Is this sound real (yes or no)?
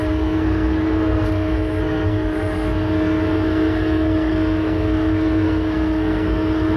no